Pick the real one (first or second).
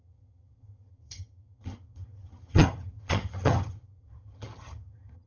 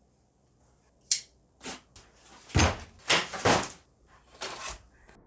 second